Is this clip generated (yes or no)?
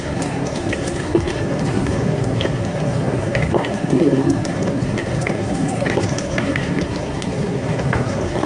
yes